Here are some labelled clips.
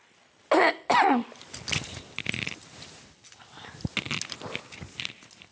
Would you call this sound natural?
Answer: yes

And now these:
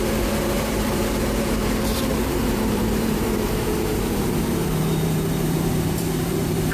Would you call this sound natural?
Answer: no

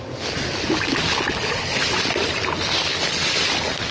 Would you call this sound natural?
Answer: yes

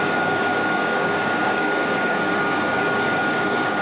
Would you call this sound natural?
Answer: no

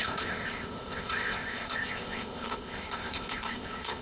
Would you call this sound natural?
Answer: no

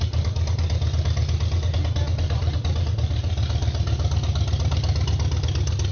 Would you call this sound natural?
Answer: yes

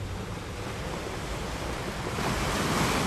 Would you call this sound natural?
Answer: yes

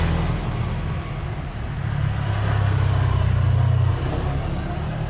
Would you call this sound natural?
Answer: yes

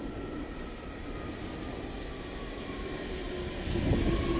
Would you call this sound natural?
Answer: yes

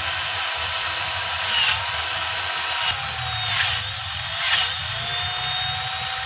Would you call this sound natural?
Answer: yes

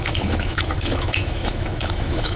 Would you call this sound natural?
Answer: no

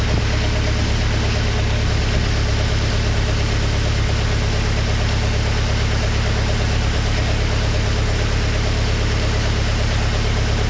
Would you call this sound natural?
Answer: yes